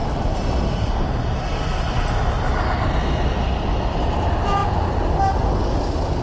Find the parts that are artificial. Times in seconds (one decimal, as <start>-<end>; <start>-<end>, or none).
none